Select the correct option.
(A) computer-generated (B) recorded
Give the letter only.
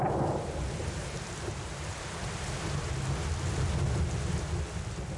B